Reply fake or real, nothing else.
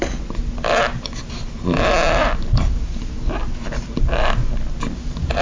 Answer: real